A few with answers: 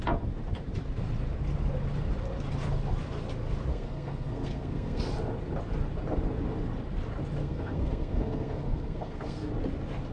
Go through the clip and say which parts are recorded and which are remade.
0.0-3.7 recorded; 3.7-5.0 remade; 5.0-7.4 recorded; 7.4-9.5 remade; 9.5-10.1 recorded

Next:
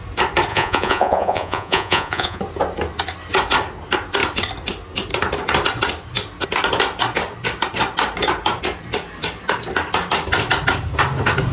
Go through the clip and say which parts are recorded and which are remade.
0.0-0.5 recorded; 0.5-2.4 remade; 2.4-11.5 recorded

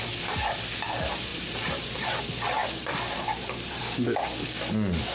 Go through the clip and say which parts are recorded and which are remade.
0.0-1.3 recorded; 1.3-2.2 remade; 2.2-2.6 recorded; 2.6-3.8 remade; 3.8-5.1 recorded

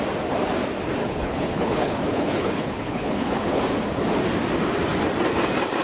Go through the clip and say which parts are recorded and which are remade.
0.0-1.0 recorded; 1.0-3.6 remade; 3.6-5.8 recorded

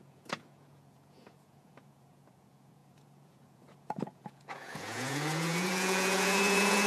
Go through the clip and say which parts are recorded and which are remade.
0.0-6.9 remade

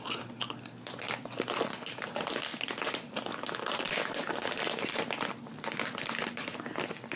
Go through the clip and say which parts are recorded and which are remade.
0.0-7.2 recorded